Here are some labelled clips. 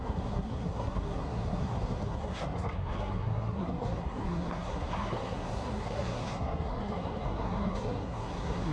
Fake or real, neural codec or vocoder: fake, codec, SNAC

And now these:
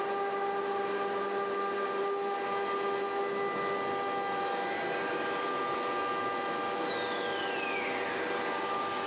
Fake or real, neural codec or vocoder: real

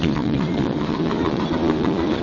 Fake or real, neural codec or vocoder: fake, vocoder, Vocos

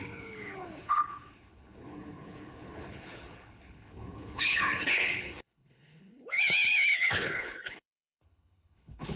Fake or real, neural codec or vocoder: fake, codec, HILCodec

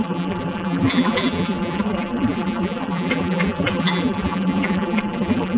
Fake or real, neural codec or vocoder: fake, vocoder, BigVGAN v2